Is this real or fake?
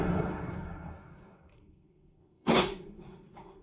fake